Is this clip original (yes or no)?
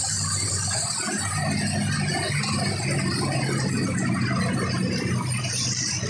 yes